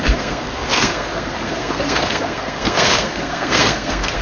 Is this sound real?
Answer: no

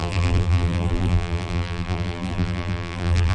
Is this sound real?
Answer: no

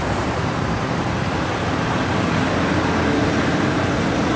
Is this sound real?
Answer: no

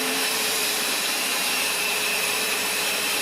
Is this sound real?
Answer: no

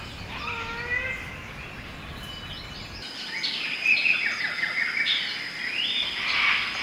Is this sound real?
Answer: yes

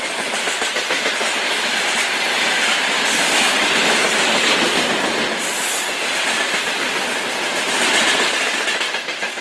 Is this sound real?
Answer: yes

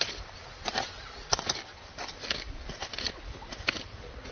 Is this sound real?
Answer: yes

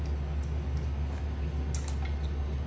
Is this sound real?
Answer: yes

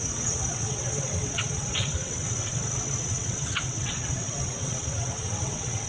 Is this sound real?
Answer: no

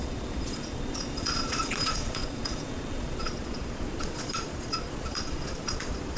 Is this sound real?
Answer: no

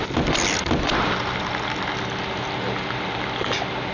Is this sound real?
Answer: yes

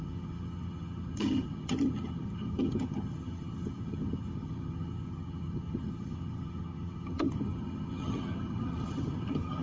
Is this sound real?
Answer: no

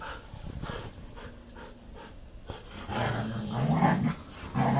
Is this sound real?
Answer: yes